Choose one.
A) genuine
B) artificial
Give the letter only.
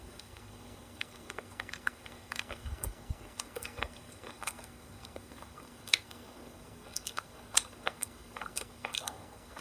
B